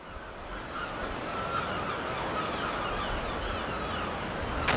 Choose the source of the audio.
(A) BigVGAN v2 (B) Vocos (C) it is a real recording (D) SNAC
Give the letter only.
C